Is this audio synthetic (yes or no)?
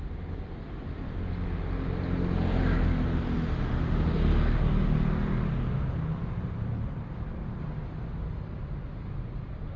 no